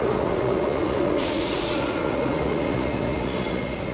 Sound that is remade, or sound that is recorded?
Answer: remade